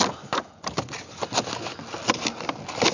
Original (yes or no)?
yes